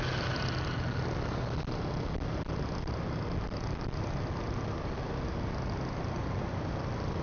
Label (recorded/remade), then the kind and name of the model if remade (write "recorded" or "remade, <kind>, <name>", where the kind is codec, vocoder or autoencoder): recorded